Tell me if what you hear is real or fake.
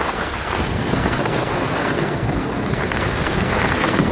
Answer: fake